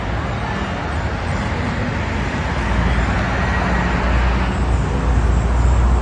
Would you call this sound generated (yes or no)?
no